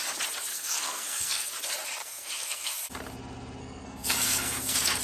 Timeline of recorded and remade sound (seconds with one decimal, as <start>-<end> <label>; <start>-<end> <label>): 0.0-0.5 recorded; 0.5-1.5 remade; 1.5-2.0 recorded; 2.0-2.8 remade; 2.8-3.6 recorded; 3.6-5.0 remade